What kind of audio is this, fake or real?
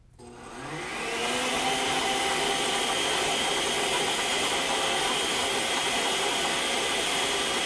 real